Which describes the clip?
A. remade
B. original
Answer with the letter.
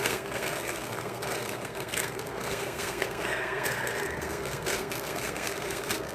A